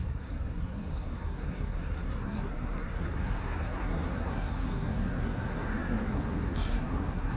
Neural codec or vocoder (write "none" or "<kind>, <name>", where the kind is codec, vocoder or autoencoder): codec, SNAC